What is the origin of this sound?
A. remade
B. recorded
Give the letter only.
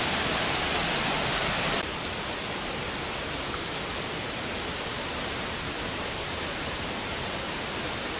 B